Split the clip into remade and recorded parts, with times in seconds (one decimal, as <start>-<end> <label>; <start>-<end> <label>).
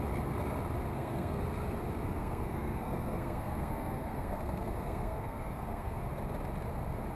0.0-0.9 recorded; 0.9-1.4 remade; 1.4-2.2 recorded; 2.2-6.0 remade; 6.0-7.2 recorded